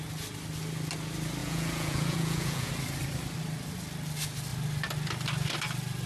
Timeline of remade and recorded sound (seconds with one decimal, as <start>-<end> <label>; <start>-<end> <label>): 0.0-1.4 recorded; 1.4-2.7 remade; 2.7-6.1 recorded